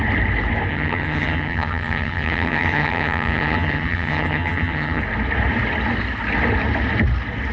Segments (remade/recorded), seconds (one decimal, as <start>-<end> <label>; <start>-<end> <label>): 0.0-0.7 recorded; 0.7-5.0 remade; 5.0-7.5 recorded